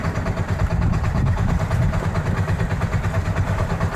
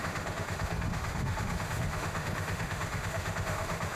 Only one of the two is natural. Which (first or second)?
first